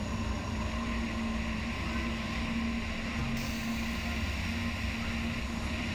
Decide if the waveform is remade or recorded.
recorded